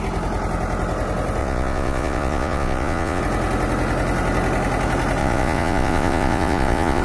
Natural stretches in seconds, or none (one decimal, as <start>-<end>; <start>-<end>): 0.0-1.4; 3.2-5.2